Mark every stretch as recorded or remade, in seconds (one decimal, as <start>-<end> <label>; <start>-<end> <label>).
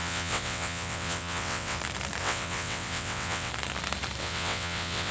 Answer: 0.0-1.8 remade; 1.8-2.2 recorded; 2.2-3.5 remade; 3.5-4.2 recorded; 4.2-5.1 remade